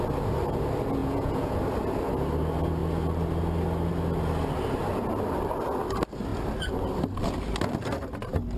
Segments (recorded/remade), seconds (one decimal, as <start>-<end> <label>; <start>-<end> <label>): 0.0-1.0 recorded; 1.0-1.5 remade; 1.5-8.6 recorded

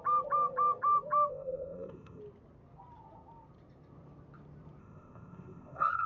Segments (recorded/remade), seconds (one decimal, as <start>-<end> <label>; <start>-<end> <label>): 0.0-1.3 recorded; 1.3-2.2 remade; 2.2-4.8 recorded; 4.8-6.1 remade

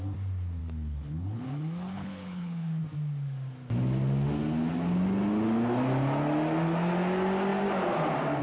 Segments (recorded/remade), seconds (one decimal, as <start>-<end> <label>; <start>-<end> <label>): 0.0-0.6 recorded; 0.6-2.8 remade; 2.8-8.4 recorded